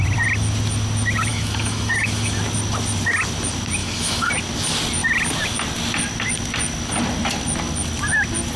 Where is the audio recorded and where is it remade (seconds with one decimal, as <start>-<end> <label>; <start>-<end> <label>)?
0.0-1.3 recorded; 1.3-2.4 remade; 2.4-3.8 recorded; 3.8-4.3 remade; 4.3-8.6 recorded